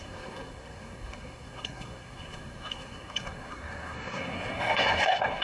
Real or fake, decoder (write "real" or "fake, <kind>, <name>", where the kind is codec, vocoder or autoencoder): fake, codec, SNAC